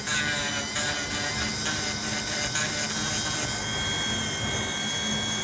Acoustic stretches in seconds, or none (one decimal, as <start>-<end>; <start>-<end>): 0.0-5.4